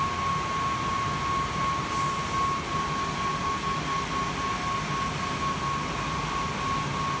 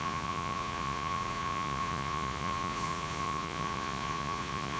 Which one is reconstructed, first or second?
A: second